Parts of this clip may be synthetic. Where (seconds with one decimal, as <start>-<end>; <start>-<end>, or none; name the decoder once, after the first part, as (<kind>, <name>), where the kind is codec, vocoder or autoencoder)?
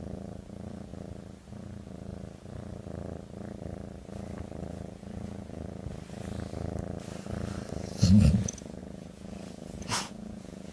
0.0-0.9 (vocoder, Vocos); 1.5-2.1; 4.7-5.9; 7.7-10.7